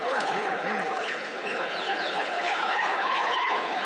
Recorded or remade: remade